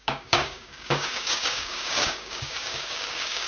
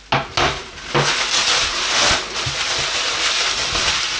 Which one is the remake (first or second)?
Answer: first